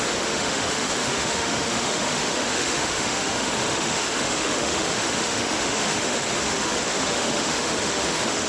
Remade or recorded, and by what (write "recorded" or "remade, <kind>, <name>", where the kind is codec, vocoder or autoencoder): remade, autoencoder, DAC-VAE